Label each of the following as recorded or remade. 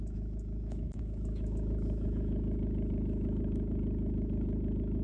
remade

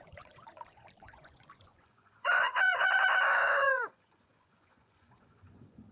remade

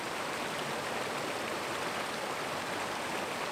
recorded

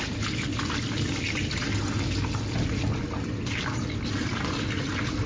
recorded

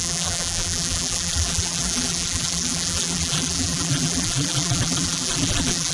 remade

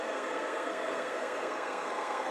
remade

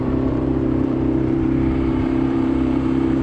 remade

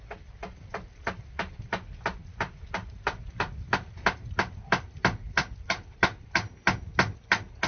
recorded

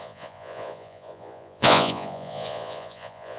remade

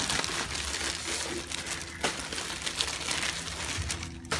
recorded